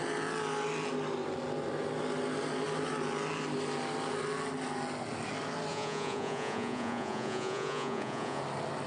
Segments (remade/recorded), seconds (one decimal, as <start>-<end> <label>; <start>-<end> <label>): 0.0-5.7 recorded; 5.7-8.4 remade; 8.4-8.9 recorded